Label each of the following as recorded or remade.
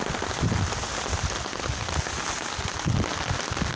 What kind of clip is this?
recorded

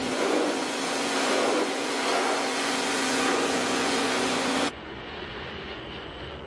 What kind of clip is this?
remade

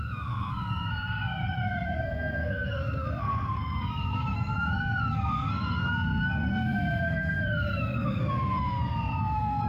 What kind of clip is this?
remade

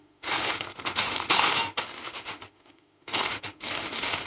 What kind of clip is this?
remade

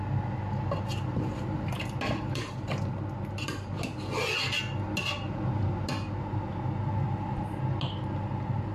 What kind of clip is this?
recorded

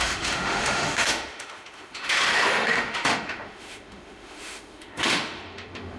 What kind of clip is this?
remade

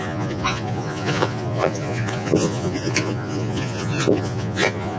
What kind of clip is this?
remade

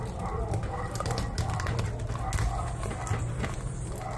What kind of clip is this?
recorded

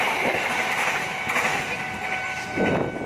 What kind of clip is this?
recorded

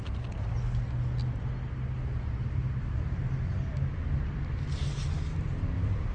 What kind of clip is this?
recorded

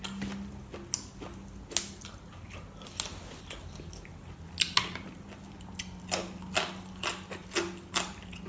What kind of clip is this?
recorded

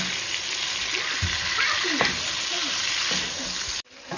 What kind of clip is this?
recorded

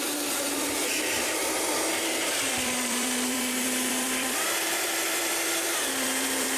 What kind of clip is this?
remade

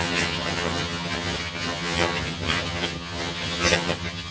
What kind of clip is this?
remade